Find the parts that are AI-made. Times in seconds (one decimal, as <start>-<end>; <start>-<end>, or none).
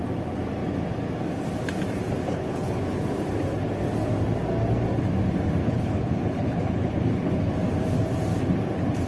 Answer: 2.3-3.0; 5.6-7.5